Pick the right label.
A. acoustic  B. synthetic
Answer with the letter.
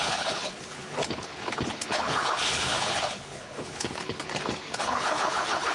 B